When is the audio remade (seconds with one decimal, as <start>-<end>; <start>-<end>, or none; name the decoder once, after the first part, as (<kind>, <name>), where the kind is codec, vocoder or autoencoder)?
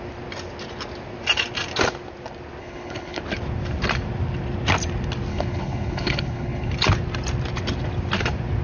2.6-3.2 (codec, HILCodec); 5.3-6.7